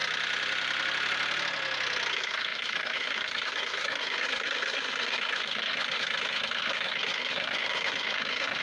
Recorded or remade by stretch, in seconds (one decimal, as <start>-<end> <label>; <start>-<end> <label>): 0.0-2.1 recorded; 2.1-8.6 remade